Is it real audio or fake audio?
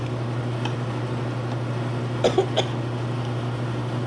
real